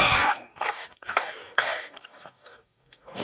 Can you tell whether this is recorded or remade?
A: remade